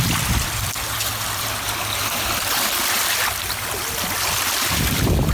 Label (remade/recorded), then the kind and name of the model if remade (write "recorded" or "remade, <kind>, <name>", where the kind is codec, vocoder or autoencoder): remade, vocoder, BigVGAN v2